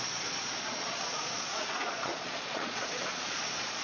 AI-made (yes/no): yes